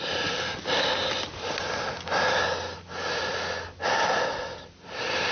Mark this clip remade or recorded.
recorded